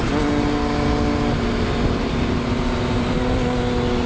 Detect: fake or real real